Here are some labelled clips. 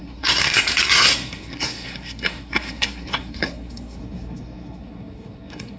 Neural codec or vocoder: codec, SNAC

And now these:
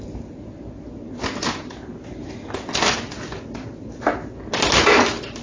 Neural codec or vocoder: none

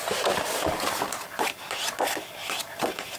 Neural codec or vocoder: none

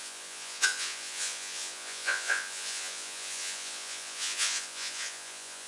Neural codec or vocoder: vocoder, Vocos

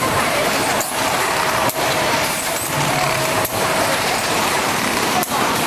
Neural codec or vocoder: vocoder, BigVGAN v2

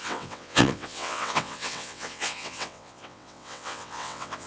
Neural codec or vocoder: vocoder, WaveNeXt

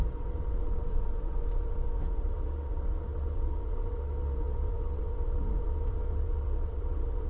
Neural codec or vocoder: vocoder, WaveNeXt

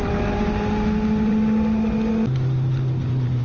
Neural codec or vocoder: none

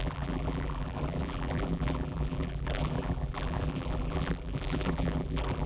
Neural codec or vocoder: vocoder, BigVGAN v2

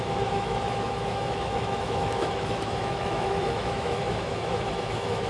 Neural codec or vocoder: autoencoder, DAC-VAE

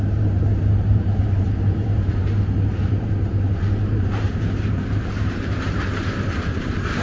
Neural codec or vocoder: vocoder, BigVGAN v2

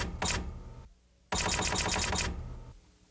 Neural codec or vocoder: none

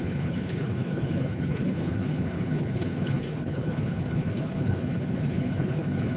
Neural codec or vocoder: codec, HILCodec